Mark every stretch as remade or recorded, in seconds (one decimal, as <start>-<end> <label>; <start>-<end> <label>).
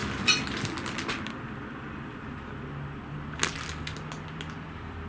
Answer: 0.0-5.1 recorded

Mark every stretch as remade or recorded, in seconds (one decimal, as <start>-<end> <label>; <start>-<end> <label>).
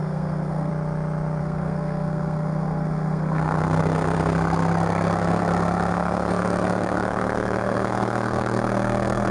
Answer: 0.0-0.7 remade; 0.7-1.4 recorded; 1.4-9.3 remade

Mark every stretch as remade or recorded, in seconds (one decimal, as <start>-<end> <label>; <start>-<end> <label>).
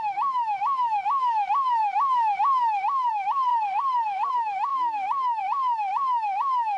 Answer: 0.0-3.5 remade; 3.5-4.3 recorded; 4.3-6.8 remade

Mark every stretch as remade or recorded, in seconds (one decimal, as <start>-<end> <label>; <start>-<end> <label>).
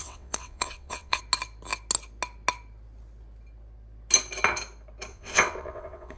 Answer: 0.0-1.2 remade; 1.2-5.1 recorded; 5.1-6.2 remade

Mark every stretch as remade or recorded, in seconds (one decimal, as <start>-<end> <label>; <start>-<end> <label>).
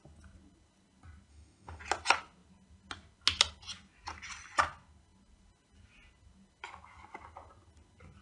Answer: 0.0-1.3 recorded; 1.3-1.8 remade; 1.8-8.2 recorded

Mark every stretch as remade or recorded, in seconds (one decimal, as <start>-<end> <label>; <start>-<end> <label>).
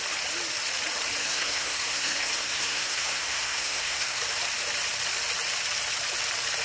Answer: 0.0-1.2 recorded; 1.2-4.2 remade; 4.2-6.6 recorded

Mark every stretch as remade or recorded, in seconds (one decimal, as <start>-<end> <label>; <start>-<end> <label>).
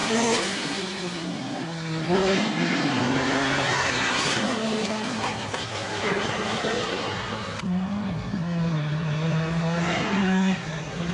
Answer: 0.0-11.1 remade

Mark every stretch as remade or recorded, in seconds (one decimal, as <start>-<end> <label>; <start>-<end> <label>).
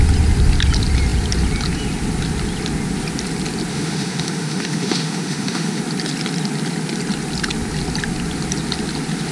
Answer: 0.0-3.7 recorded; 3.7-5.8 remade; 5.8-9.3 recorded